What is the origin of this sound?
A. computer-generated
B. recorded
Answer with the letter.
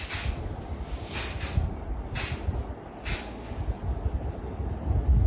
B